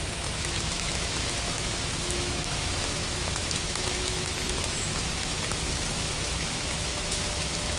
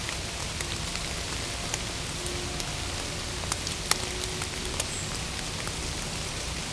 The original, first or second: second